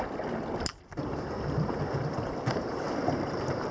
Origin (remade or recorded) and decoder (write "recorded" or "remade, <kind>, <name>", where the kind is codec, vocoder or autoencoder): recorded